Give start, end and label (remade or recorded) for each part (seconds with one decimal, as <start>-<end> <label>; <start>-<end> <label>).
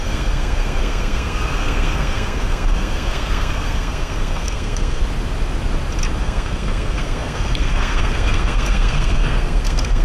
0.0-5.0 remade; 5.0-6.2 recorded; 6.2-10.0 remade